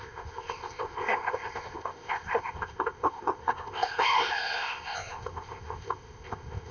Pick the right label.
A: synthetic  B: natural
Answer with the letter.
A